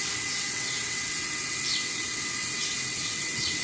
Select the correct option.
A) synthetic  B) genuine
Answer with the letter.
A